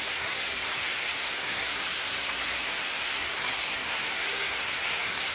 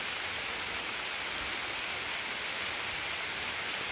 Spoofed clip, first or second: first